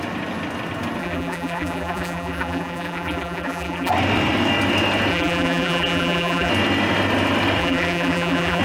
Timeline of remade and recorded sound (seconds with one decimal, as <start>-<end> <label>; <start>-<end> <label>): 0.0-1.0 recorded; 1.0-3.9 remade; 3.9-5.1 recorded; 5.1-6.5 remade; 6.5-7.6 recorded; 7.6-8.6 remade